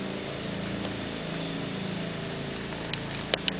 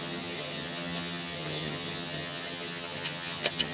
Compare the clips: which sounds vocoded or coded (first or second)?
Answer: second